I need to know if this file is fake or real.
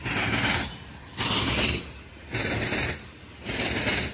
real